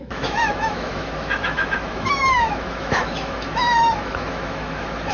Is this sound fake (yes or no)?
yes